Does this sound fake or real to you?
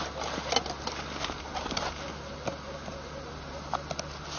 real